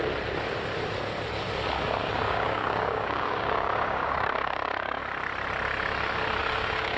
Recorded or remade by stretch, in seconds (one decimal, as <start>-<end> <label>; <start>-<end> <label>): 0.0-2.0 recorded; 2.0-5.0 remade; 5.0-6.4 recorded; 6.4-7.0 remade